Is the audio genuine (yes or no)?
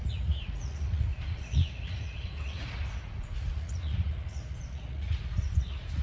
no